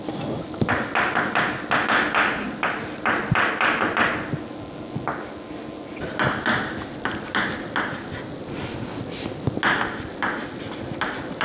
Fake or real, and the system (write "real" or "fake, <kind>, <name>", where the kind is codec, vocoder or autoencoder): real